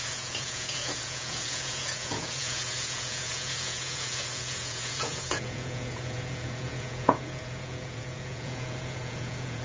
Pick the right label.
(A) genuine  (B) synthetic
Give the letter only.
B